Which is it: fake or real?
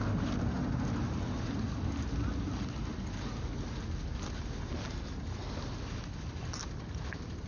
real